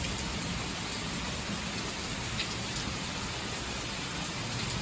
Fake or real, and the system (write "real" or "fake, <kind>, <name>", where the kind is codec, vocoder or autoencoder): real